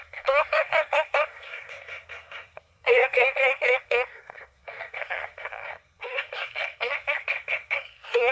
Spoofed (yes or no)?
yes